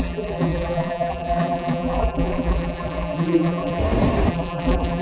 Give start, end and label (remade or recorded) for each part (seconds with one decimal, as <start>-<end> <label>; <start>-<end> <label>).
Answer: 0.0-3.8 remade; 3.8-4.3 recorded; 4.3-5.0 remade